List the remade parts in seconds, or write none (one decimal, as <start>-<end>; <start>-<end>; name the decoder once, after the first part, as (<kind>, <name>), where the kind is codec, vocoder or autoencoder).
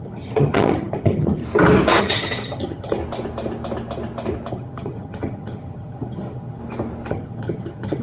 0.0-1.4 (vocoder, HiFi-GAN); 2.0-3.0; 4.5-6.6; 7.1-8.0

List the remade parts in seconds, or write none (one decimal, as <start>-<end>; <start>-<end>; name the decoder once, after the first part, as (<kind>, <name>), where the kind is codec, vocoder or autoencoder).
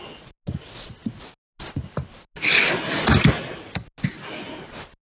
none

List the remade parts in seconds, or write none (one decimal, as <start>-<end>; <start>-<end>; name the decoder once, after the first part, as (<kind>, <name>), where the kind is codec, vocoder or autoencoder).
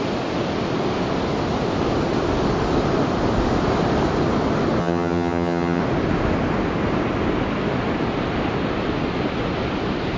4.8-5.8 (vocoder, HiFi-GAN)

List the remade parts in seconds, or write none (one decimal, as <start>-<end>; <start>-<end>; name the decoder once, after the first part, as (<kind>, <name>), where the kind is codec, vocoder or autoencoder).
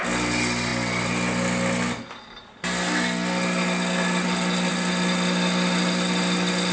none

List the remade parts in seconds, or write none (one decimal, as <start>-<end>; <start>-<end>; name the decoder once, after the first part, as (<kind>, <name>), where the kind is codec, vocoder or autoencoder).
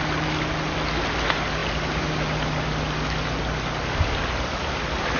none